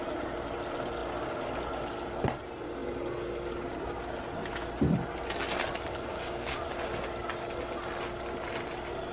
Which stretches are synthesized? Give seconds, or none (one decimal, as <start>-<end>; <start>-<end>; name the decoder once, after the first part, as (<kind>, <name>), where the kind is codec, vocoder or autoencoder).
6.1-6.6 (codec, DAC)